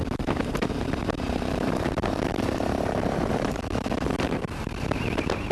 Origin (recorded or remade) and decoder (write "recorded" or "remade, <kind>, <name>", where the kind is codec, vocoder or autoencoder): remade, vocoder, BigVGAN v2